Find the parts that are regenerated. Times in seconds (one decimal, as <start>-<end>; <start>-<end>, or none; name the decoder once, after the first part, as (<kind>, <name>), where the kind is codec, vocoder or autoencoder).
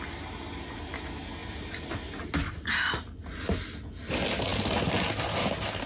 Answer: none